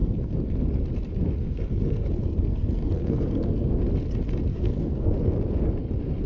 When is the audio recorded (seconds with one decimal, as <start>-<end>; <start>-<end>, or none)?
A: 0.6-1.4; 3.7-4.5; 5.1-6.3